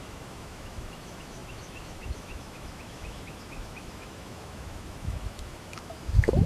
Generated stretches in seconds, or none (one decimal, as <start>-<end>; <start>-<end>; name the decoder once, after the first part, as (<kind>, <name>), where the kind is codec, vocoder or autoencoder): 0.0-6.5 (autoencoder, DAC-VAE)